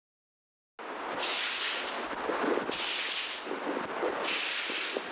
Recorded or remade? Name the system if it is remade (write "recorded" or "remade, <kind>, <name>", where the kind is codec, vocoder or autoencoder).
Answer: recorded